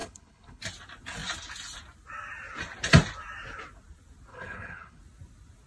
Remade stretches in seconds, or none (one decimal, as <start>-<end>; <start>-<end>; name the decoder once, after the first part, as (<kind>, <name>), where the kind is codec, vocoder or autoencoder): 0.0-0.6 (codec, HILCodec); 4.3-5.0